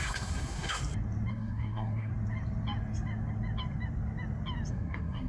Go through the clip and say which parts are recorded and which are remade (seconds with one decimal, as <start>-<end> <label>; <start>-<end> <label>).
0.0-0.8 remade; 0.8-1.3 recorded; 1.3-2.1 remade; 2.1-4.7 recorded; 4.7-5.3 remade